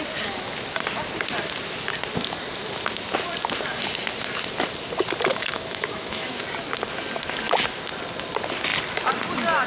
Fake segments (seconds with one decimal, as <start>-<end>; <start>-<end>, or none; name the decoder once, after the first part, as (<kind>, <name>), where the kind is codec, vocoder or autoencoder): 5.3-6.4 (autoencoder, DAC-VAE)